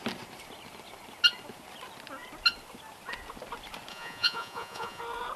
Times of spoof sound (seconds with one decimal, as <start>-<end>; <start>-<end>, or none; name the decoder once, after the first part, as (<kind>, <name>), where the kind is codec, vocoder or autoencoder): 3.9-5.0 (vocoder, Vocos)